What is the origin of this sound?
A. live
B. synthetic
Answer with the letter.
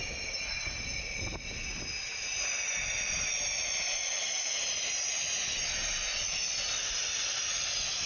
A